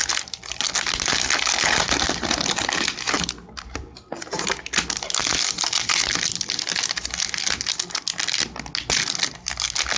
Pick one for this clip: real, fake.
real